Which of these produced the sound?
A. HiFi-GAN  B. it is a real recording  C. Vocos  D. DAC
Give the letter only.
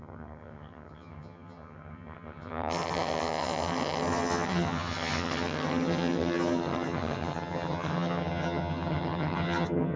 A